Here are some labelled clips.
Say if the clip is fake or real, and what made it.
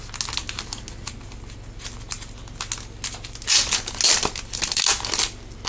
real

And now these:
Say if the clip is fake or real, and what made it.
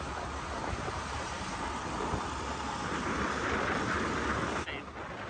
real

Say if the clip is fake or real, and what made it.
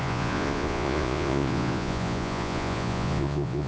fake, vocoder, Vocos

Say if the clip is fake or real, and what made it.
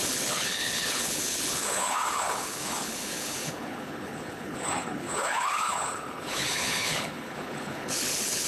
fake, codec, HILCodec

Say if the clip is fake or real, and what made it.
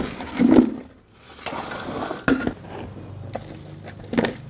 real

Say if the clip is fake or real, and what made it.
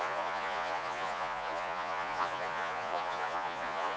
fake, vocoder, Vocos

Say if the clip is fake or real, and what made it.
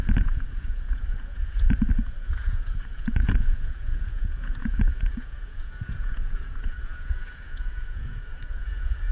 fake, vocoder, Vocos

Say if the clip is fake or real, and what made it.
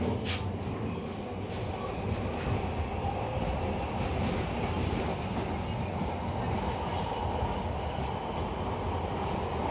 real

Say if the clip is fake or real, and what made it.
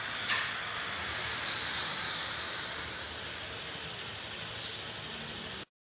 real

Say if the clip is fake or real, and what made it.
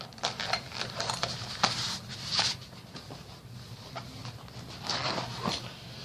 real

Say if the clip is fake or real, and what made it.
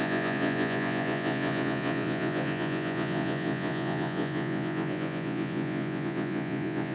fake, vocoder, Vocos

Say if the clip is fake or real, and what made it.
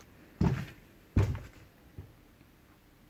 real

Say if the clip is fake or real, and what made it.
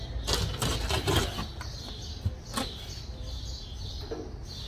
real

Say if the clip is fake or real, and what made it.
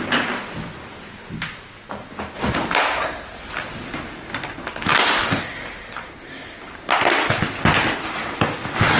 real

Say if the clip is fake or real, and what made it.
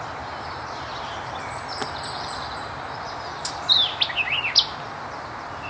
real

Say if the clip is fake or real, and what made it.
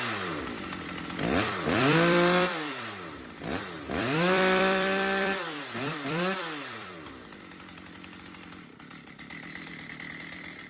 fake, vocoder, BigVGAN v2